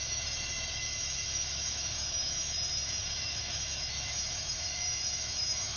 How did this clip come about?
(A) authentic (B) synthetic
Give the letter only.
B